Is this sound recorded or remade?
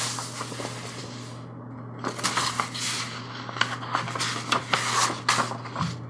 recorded